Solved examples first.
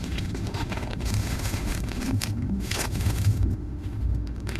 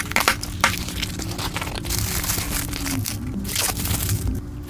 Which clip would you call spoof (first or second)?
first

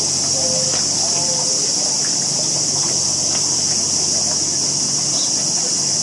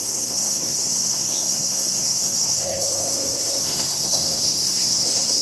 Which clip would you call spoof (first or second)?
second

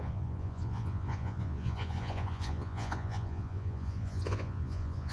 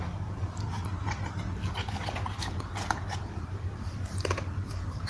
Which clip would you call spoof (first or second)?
first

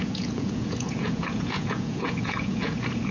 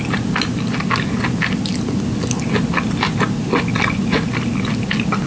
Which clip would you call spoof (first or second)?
first